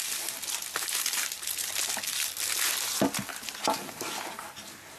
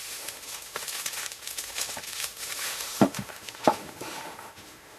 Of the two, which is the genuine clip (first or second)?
first